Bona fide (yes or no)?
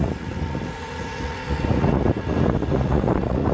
no